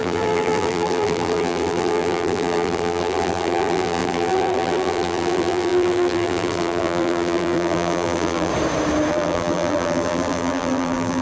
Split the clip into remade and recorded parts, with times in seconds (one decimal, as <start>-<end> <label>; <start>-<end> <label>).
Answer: 0.0-8.5 remade; 8.5-9.1 recorded; 9.1-11.2 remade